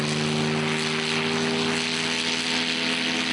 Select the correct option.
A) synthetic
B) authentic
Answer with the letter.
B